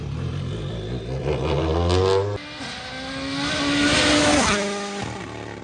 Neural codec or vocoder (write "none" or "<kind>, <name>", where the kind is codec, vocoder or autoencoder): none